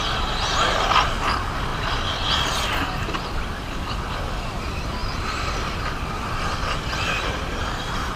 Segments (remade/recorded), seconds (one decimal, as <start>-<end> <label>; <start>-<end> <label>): 0.0-8.2 recorded